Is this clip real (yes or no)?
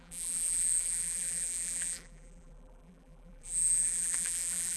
no